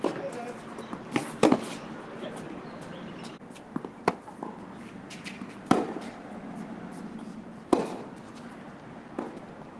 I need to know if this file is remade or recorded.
recorded